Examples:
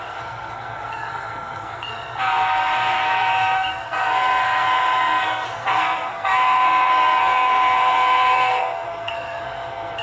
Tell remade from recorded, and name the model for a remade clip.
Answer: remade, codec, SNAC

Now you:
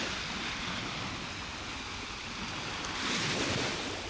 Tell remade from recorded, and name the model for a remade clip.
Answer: recorded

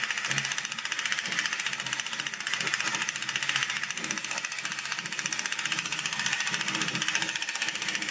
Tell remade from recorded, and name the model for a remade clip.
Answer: recorded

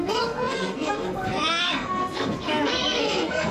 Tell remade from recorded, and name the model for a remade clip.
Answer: remade, codec, SNAC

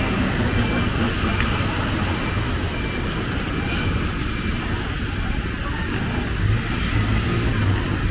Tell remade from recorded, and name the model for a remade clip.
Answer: recorded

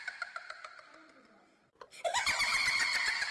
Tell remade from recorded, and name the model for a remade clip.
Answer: recorded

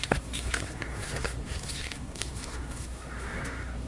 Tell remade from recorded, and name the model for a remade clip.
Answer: remade, codec, SNAC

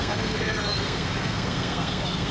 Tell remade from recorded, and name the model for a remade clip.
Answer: remade, codec, SNAC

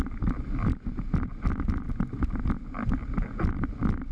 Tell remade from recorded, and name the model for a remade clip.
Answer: recorded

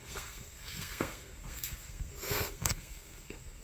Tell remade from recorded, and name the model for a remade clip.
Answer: remade, codec, SNAC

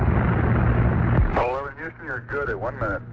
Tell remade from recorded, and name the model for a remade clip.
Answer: recorded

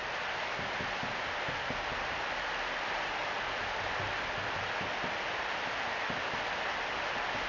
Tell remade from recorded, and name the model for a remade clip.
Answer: recorded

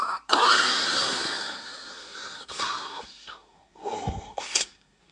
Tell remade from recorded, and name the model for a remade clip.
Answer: remade, codec, SNAC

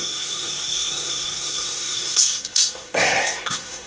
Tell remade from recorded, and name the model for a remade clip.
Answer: remade, codec, SNAC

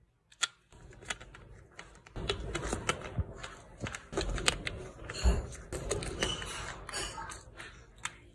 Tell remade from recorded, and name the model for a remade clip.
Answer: recorded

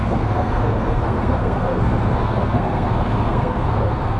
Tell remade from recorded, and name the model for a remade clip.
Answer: remade, codec, SNAC